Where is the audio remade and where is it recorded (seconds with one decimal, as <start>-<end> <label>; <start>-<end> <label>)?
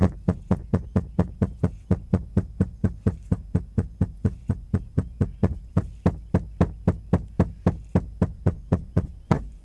0.0-5.9 remade; 5.9-8.3 recorded; 8.3-9.6 remade